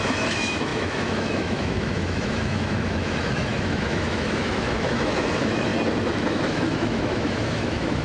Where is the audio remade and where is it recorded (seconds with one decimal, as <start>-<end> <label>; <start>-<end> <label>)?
0.0-5.7 remade; 5.7-6.3 recorded; 6.3-8.0 remade